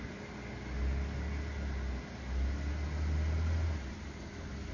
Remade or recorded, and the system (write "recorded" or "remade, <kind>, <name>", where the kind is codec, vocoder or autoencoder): recorded